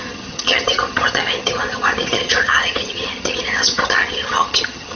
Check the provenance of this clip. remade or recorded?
remade